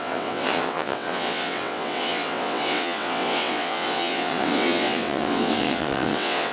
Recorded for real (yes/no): no